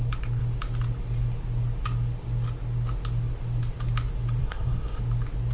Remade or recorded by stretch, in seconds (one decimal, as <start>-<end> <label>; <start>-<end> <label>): 0.0-4.4 recorded; 4.4-5.0 remade; 5.0-5.5 recorded